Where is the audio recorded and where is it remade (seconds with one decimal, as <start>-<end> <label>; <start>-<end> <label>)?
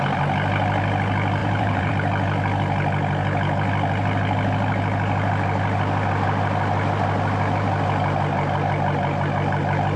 0.0-1.4 recorded; 1.4-1.9 remade; 1.9-10.0 recorded